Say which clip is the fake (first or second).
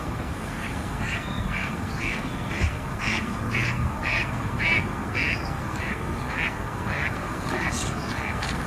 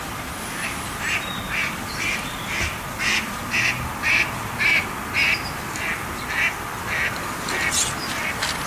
first